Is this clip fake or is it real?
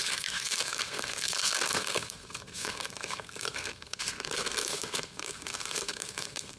fake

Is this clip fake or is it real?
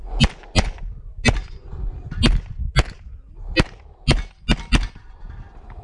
real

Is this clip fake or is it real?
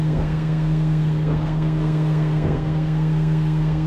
fake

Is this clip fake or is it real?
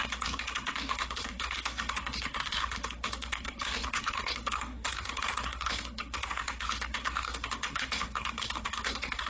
fake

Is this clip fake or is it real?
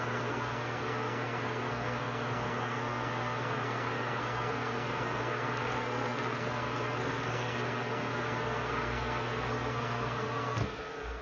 fake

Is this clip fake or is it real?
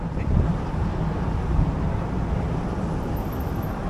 real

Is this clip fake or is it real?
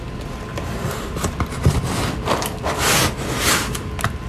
real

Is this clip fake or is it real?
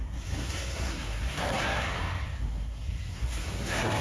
fake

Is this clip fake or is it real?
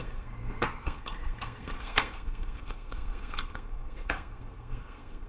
fake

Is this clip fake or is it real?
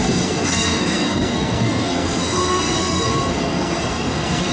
fake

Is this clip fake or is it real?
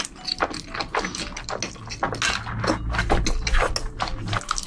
real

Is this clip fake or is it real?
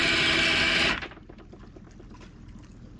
real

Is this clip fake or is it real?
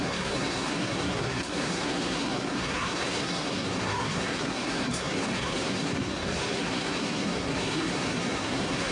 fake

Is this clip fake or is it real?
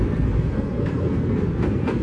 fake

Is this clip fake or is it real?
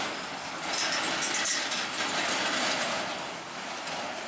real